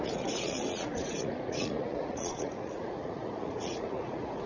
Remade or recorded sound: remade